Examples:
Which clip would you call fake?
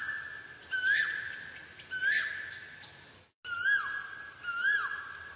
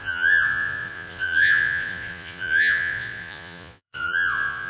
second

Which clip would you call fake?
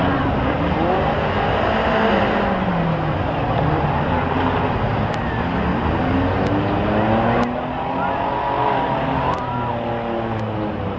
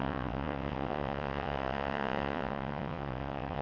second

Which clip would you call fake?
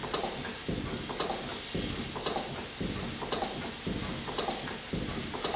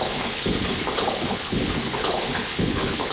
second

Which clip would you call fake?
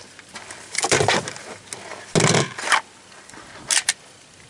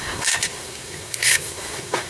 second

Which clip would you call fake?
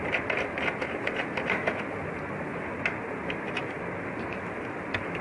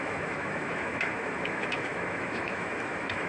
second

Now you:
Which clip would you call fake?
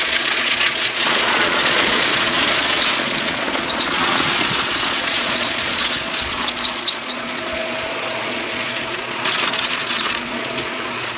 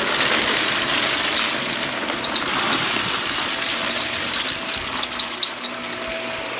first